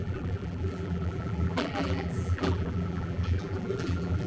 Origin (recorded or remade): remade